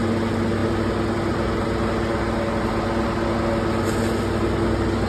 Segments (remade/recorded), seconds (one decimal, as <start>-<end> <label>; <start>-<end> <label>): 0.0-5.1 recorded